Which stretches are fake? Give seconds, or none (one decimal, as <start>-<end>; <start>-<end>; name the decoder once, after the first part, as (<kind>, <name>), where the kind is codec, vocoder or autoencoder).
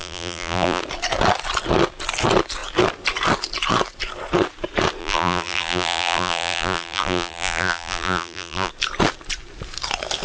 0.0-0.8 (vocoder, BigVGAN v2); 5.0-8.7